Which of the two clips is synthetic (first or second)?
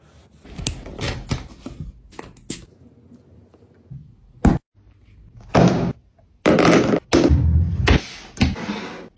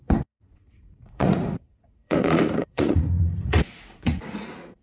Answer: second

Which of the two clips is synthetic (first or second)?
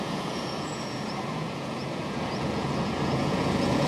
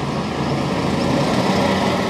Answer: first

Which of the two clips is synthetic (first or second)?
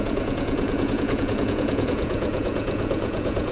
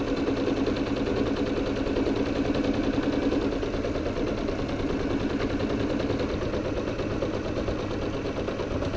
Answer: first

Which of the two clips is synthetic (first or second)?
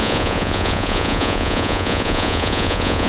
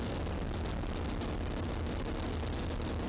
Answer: first